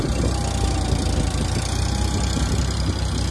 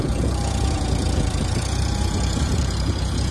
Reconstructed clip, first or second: second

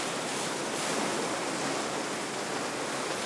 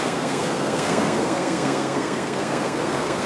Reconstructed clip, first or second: second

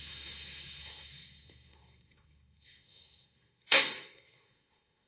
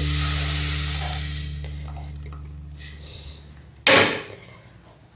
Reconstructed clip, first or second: first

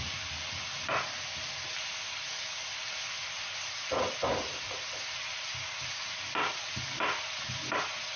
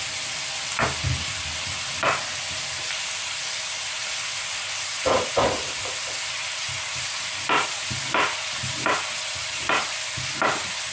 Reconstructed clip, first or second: second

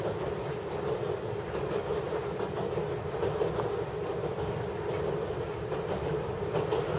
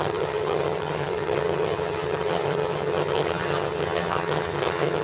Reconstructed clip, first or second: second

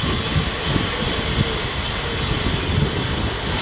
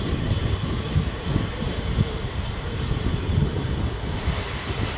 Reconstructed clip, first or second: second